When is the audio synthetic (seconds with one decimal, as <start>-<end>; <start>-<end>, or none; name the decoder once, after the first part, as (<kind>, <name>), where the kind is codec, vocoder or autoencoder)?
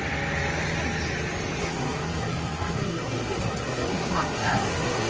1.6-5.1 (codec, SNAC)